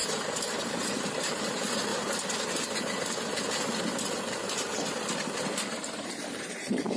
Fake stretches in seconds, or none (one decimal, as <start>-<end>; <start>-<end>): 0.0-1.9; 6.1-7.0

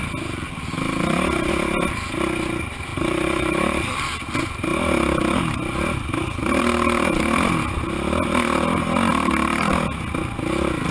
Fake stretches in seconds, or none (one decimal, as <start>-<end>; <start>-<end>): 2.9-3.9

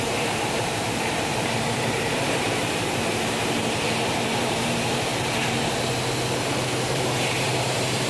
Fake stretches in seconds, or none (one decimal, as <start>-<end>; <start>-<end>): 0.0-5.1; 6.3-8.1

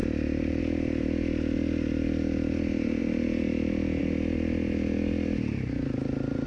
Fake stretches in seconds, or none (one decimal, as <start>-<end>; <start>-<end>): 0.0-0.6